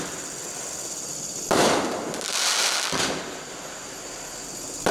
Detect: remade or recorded recorded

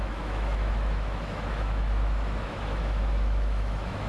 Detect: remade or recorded remade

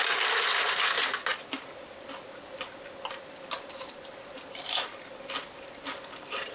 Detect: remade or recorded recorded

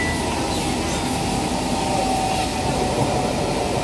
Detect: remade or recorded recorded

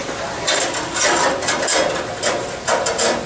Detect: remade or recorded recorded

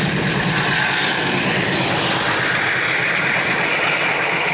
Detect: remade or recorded recorded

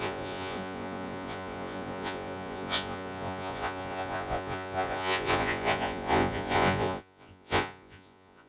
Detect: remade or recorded remade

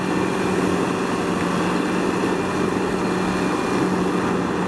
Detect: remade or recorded recorded